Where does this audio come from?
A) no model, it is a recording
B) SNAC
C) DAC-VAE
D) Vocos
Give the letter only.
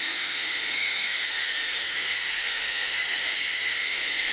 C